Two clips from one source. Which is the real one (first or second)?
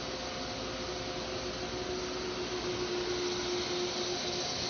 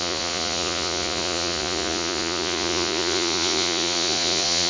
first